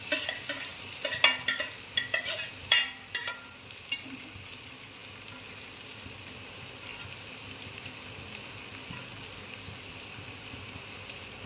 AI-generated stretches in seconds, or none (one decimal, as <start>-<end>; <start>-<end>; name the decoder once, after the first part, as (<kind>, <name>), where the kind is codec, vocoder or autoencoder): 0.0-0.7 (vocoder, BigVGAN v2); 2.6-3.2; 4.2-5.0; 5.8-6.9; 9.4-11.5

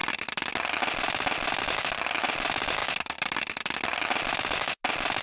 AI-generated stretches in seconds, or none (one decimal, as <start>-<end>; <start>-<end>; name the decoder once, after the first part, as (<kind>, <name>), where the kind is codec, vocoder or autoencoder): none

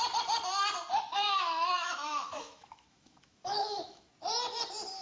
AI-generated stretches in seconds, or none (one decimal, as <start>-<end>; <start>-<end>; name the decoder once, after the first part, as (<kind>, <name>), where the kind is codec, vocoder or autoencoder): 1.1-4.1 (autoencoder, DAC-VAE)

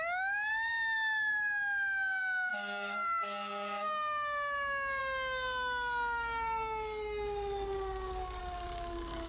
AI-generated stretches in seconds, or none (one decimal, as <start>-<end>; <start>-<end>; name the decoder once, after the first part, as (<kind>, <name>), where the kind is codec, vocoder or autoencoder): 0.0-9.3 (codec, DAC)

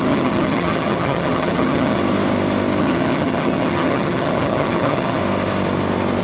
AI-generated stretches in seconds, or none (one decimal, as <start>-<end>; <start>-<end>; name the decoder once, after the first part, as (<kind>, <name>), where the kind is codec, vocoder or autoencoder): 0.0-2.0 (vocoder, HiFi-GAN); 2.8-5.2

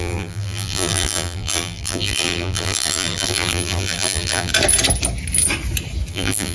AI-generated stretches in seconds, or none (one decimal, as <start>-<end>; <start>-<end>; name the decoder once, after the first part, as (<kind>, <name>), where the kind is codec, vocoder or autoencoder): 0.0-4.5 (vocoder, BigVGAN v2); 6.1-6.5

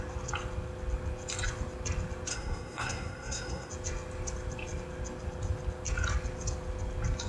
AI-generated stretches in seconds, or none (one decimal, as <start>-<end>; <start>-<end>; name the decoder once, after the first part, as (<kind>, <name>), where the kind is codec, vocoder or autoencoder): 2.3-3.7 (codec, SNAC)